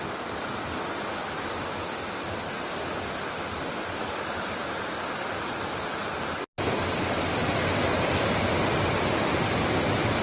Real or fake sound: real